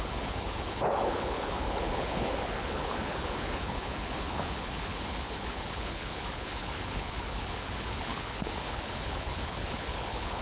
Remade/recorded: remade